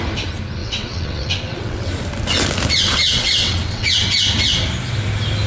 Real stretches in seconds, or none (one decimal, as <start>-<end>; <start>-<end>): 0.0-0.6; 1.9-2.9; 4.0-5.5